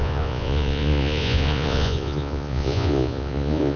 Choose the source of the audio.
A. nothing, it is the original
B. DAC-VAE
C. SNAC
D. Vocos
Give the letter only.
D